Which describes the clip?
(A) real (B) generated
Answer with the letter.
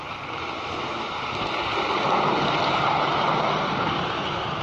A